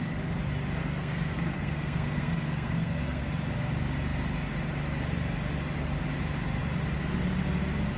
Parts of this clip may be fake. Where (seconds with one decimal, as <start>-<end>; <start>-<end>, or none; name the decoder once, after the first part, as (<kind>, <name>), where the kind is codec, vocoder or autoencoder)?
0.8-3.3 (codec, SNAC)